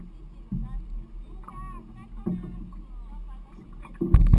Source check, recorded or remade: recorded